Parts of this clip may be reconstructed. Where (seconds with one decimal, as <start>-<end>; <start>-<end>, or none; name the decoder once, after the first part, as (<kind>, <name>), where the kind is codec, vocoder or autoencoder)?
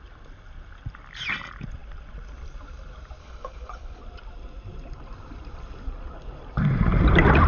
3.2-4.0 (codec, HILCodec)